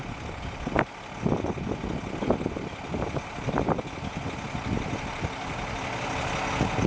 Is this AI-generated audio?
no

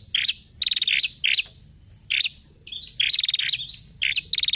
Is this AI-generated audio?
no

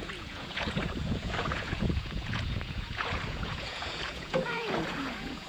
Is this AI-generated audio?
yes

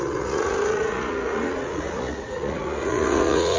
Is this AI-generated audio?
yes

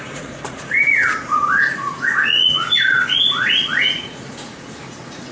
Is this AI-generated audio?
yes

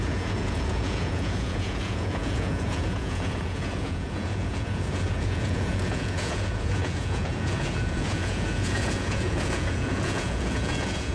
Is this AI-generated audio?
yes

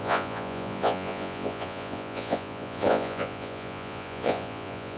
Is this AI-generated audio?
yes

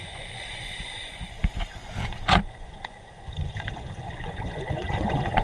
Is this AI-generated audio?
yes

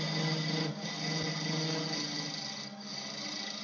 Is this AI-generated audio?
no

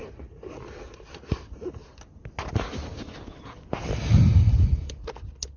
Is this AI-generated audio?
no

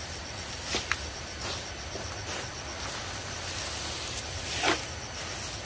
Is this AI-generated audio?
no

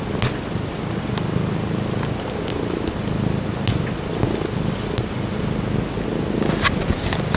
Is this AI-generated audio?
no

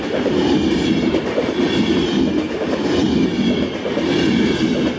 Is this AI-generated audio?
no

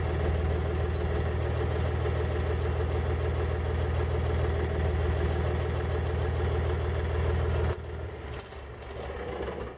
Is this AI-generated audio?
no